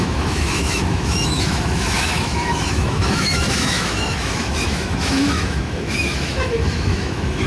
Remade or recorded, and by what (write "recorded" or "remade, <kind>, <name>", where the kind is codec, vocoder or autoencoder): remade, autoencoder, DAC-VAE